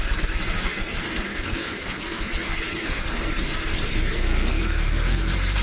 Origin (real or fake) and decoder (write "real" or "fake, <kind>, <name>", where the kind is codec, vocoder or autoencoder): fake, codec, SNAC